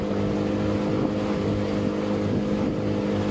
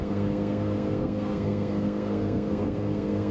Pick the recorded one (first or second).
first